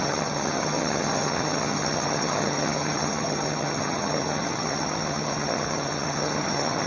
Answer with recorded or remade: remade